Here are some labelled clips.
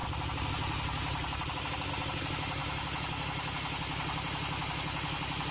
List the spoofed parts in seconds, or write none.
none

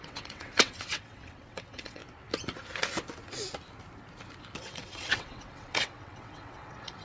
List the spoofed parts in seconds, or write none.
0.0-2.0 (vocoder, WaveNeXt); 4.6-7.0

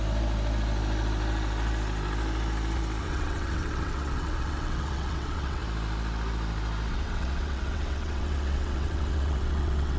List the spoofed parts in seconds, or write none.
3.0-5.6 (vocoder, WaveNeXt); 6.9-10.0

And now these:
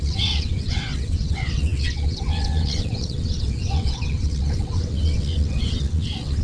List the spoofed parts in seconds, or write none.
0.0-6.4 (vocoder, WaveNeXt)

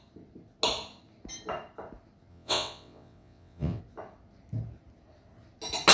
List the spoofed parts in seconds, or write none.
2.3-3.8 (vocoder, WaveNeXt)